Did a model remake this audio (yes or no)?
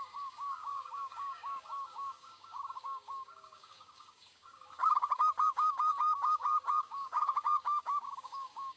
yes